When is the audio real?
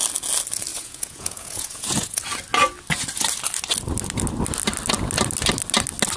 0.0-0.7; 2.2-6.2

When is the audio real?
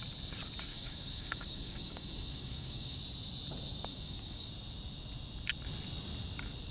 0.0-0.7; 3.0-3.9; 4.5-6.7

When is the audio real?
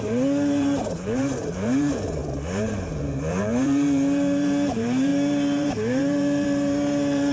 none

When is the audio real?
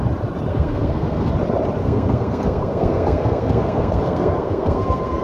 0.0-0.5; 1.3-1.8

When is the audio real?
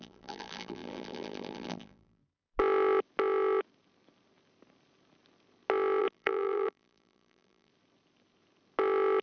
2.2-6.0; 7.7-9.2